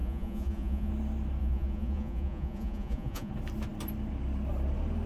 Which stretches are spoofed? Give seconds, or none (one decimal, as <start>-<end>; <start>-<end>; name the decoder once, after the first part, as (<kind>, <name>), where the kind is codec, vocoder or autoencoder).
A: 0.0-0.9 (vocoder, Vocos); 1.4-3.3